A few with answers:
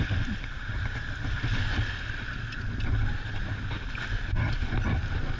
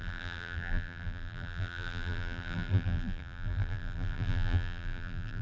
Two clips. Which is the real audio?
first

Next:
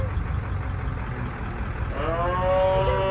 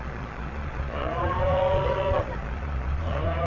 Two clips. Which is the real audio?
first